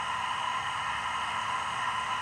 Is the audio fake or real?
fake